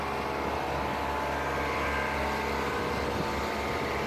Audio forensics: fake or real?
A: real